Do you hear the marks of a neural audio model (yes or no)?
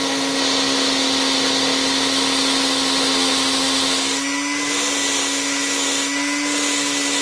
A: no